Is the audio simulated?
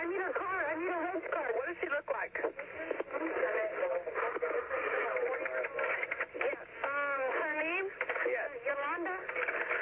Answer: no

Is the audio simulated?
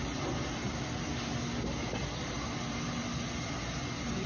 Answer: no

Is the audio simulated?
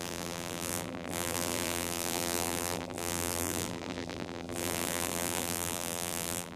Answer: yes